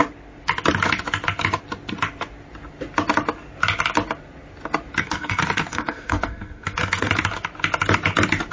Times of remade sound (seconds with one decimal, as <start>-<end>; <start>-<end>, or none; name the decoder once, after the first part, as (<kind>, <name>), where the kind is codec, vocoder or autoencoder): 5.0-7.1 (codec, SNAC)